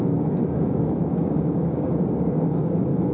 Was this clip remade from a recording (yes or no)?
yes